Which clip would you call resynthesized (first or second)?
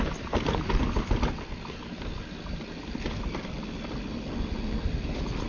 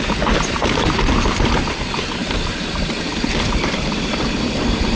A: second